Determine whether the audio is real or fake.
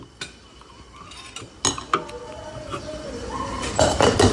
real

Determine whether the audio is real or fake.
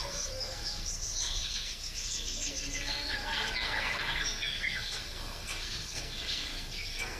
fake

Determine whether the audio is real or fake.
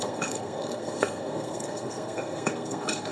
fake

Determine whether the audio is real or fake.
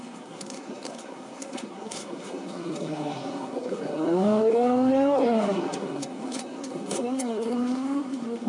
fake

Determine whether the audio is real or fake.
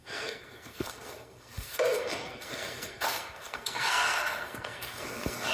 fake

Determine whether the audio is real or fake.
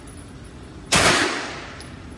real